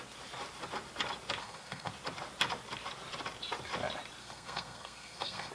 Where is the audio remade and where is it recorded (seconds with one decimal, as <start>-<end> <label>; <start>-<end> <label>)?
0.0-1.4 recorded; 1.4-1.9 remade; 1.9-4.2 recorded; 4.2-5.5 remade

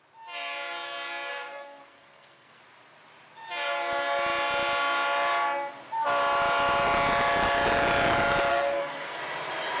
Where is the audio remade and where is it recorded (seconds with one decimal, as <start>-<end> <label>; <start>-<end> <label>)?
0.0-1.3 recorded; 1.3-2.6 remade; 2.6-8.5 recorded; 8.5-9.2 remade; 9.2-9.8 recorded

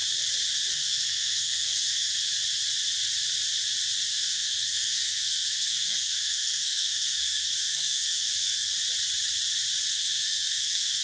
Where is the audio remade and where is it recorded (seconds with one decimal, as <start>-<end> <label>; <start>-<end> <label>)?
0.0-0.7 recorded; 0.7-2.1 remade; 2.1-4.1 recorded; 4.1-8.7 remade; 8.7-9.9 recorded; 9.9-11.0 remade

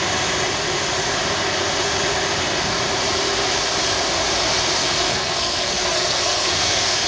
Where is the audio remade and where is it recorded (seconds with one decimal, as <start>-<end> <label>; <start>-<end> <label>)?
0.0-4.8 recorded; 4.8-7.1 remade

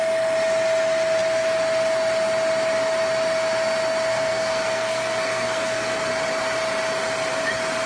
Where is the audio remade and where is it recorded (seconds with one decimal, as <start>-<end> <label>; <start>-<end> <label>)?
0.0-4.1 recorded; 4.1-6.1 remade; 6.1-7.9 recorded

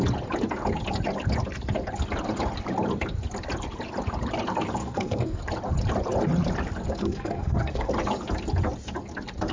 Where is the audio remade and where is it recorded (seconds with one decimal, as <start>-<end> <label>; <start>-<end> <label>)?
0.0-4.8 recorded; 4.8-5.4 remade; 5.4-7.0 recorded; 7.0-7.9 remade; 7.9-9.5 recorded

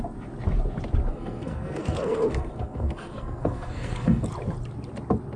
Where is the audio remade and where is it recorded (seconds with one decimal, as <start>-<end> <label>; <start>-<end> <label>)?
0.0-1.1 recorded; 1.1-4.3 remade; 4.3-5.4 recorded

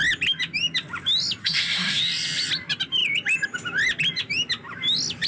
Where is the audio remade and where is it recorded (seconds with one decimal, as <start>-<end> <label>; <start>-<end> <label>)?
0.0-1.4 recorded; 1.4-2.0 remade; 2.0-5.3 recorded